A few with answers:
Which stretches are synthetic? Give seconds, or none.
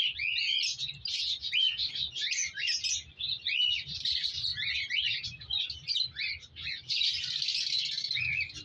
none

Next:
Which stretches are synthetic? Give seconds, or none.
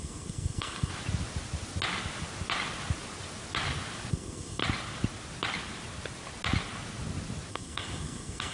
0.0-0.9 (codec, SNAC); 4.1-4.6; 7.5-8.5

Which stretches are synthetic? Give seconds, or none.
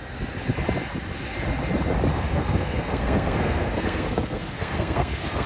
2.1-5.5 (codec, SNAC)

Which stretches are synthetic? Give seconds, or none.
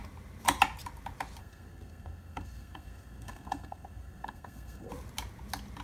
1.4-4.9 (codec, SNAC)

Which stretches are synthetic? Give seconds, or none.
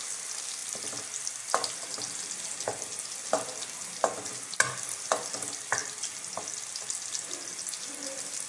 none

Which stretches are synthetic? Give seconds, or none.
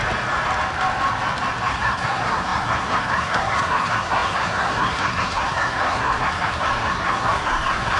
1.7-8.0 (codec, SNAC)